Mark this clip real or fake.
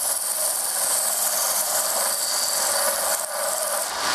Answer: real